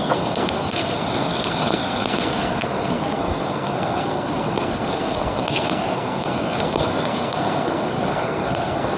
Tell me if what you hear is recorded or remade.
remade